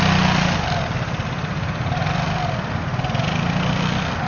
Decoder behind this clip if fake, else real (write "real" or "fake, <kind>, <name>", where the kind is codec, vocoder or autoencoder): real